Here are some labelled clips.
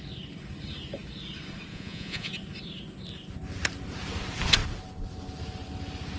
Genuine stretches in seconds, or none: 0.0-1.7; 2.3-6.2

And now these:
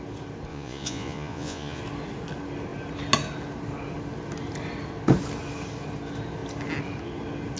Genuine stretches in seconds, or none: 0.0-0.5; 1.8-7.6

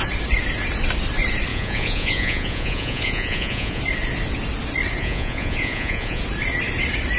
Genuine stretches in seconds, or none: 0.0-1.5; 3.8-5.0; 6.2-7.2

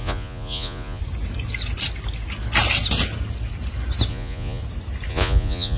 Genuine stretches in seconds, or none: 1.0-4.1; 4.6-5.1